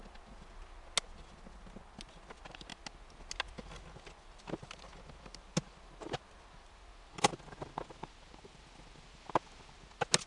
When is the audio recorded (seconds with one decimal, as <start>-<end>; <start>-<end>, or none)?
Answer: 0.0-10.3

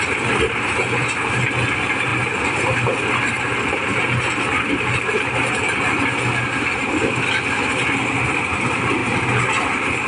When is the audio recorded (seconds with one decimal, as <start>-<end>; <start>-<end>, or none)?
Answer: 0.0-10.1

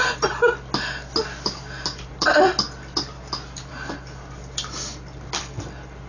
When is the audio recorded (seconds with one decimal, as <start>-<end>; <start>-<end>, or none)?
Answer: 0.0-6.1

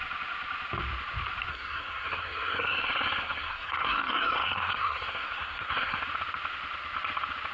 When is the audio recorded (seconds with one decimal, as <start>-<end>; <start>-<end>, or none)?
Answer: 0.0-1.5; 6.0-7.5

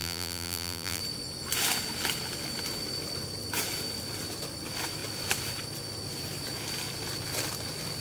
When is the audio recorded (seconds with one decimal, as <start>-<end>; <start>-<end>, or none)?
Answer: 1.0-8.0

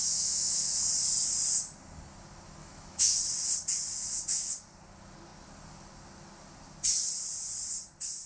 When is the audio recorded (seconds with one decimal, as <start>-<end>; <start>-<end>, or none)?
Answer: 0.8-2.6; 3.2-3.9; 4.5-8.3